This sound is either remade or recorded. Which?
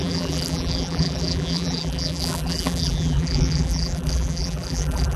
remade